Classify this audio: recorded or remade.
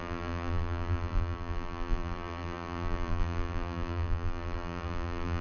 remade